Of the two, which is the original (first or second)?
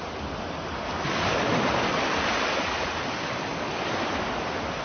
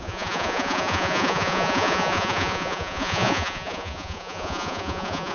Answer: first